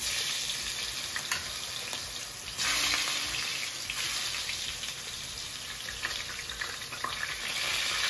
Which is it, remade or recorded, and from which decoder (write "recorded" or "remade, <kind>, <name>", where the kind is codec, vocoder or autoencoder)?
recorded